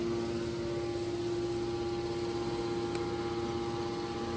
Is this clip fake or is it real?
real